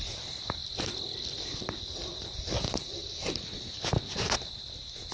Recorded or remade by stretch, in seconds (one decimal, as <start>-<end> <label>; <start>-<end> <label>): 0.0-0.6 recorded; 0.6-3.3 remade; 3.3-5.1 recorded